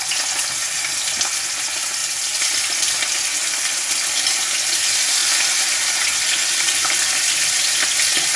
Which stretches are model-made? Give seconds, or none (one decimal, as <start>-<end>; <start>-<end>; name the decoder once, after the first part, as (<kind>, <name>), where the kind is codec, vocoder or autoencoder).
2.0-3.7 (vocoder, BigVGAN v2); 5.2-5.9